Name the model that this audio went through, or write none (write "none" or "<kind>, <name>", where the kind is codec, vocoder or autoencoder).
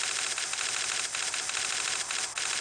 none